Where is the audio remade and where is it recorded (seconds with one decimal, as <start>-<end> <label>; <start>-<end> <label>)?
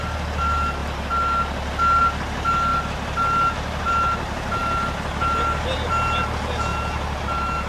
0.0-6.7 recorded; 6.7-7.2 remade; 7.2-7.7 recorded